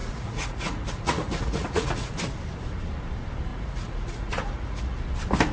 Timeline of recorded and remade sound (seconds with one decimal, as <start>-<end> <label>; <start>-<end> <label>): 0.0-2.2 remade; 2.2-3.5 recorded; 3.5-5.0 remade; 5.0-5.5 recorded